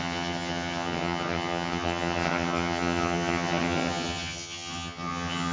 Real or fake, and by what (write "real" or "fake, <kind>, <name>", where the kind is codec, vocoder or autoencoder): fake, vocoder, HiFi-GAN